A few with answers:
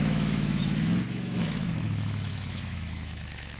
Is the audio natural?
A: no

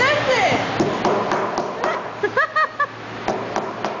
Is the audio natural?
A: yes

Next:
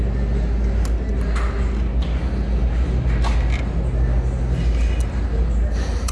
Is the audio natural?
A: yes